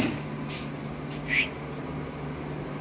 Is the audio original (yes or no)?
yes